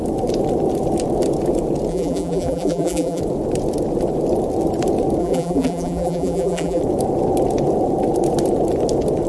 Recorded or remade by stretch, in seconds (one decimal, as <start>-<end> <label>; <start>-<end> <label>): 0.0-1.9 recorded; 1.9-3.2 remade; 3.2-5.2 recorded; 5.2-6.8 remade; 6.8-9.3 recorded